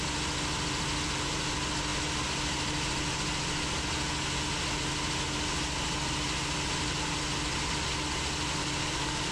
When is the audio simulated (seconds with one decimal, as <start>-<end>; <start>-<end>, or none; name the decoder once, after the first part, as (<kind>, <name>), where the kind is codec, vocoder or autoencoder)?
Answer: 8.6-9.3 (codec, DAC)